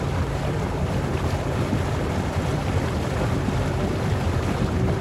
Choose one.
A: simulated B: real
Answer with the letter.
A